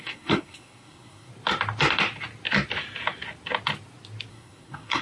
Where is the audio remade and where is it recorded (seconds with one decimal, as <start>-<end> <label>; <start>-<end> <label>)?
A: 0.0-1.3 remade; 1.3-4.3 recorded; 4.3-5.0 remade